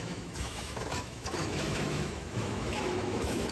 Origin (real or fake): fake